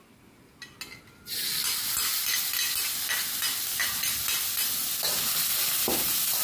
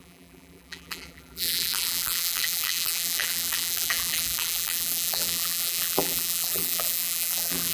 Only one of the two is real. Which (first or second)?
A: first